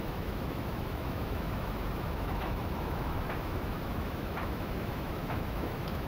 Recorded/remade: remade